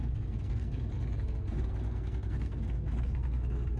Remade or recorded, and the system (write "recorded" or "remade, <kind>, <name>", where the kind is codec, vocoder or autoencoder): remade, codec, SNAC